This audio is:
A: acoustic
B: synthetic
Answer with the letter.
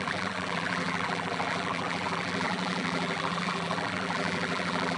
B